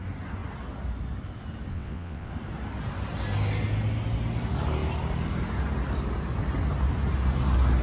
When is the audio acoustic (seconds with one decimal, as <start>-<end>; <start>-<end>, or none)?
0.0-1.7; 2.3-7.8